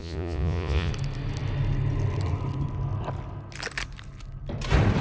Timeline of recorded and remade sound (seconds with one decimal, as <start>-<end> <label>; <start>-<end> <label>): 0.0-0.9 remade; 0.9-5.0 recorded